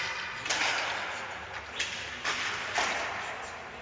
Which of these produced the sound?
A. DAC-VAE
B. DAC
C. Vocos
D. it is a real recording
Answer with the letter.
D